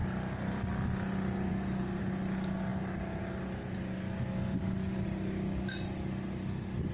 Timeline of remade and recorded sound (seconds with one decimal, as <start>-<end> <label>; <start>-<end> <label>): 0.0-1.5 recorded; 1.5-2.0 remade; 2.0-6.9 recorded